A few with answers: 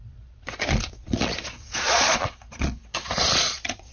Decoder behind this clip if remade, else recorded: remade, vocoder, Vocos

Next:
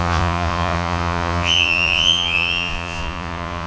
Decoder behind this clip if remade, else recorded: remade, vocoder, Vocos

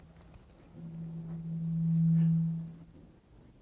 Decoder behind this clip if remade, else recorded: recorded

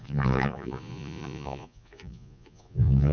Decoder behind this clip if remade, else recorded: remade, vocoder, Vocos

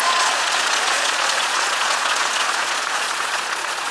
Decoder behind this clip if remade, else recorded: remade, vocoder, Vocos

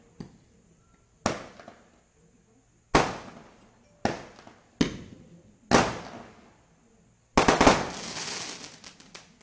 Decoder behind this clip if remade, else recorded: recorded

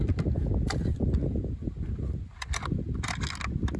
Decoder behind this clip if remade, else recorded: recorded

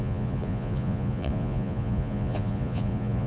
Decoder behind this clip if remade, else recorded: remade, vocoder, Vocos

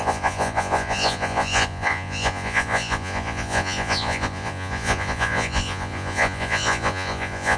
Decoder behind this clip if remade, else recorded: remade, vocoder, Vocos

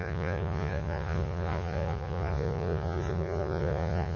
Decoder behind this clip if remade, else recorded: remade, vocoder, Vocos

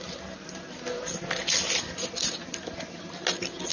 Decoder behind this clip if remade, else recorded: recorded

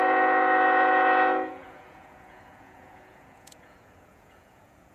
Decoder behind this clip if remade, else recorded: remade, vocoder, Vocos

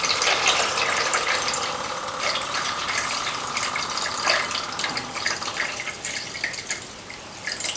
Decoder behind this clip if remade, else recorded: recorded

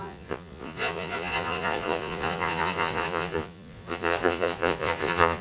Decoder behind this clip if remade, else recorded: remade, vocoder, Vocos